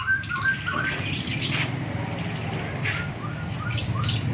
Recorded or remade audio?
recorded